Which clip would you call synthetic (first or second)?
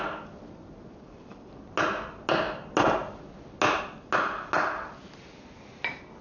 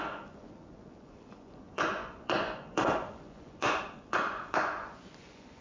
second